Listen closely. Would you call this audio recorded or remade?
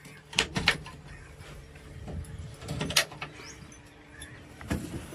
remade